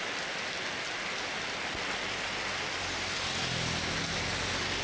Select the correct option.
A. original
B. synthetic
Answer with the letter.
A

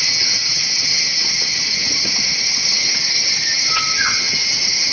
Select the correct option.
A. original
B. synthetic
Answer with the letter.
B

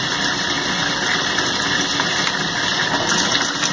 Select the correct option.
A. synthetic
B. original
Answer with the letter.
B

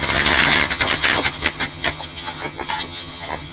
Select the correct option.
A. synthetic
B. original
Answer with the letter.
A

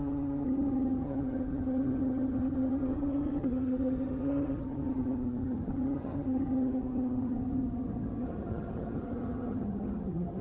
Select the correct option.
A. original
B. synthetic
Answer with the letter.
B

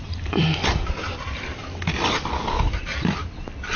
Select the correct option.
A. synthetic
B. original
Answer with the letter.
B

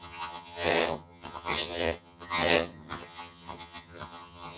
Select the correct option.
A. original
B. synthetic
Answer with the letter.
B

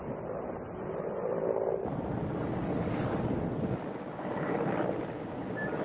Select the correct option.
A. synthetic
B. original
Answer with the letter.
B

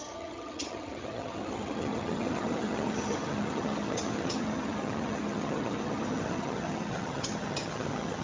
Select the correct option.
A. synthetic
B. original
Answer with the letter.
A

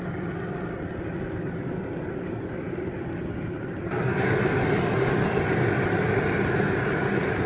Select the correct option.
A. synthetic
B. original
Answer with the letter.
B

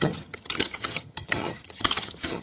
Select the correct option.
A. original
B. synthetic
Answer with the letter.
B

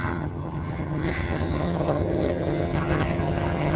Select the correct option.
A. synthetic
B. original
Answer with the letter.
A